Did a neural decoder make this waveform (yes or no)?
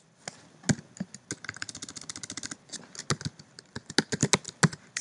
no